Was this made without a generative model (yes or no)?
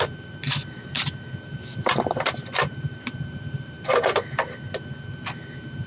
no